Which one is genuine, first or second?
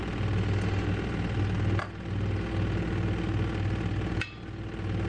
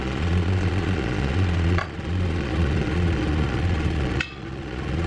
first